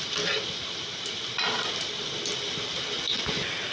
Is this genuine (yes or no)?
yes